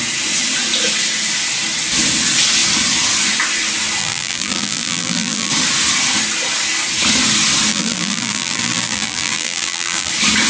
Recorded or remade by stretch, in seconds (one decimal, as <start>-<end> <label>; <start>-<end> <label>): 0.0-4.0 recorded; 4.0-5.5 remade; 5.5-7.7 recorded; 7.7-10.1 remade; 10.1-10.5 recorded